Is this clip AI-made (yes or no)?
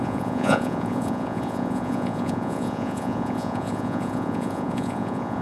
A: yes